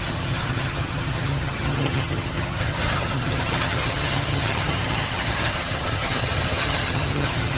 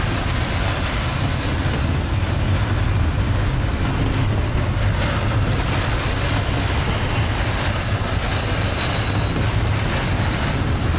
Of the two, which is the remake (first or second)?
first